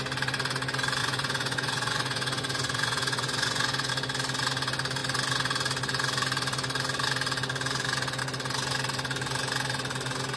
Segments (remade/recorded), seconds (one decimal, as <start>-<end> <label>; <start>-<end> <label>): 0.0-1.0 recorded; 1.0-3.9 remade; 3.9-10.4 recorded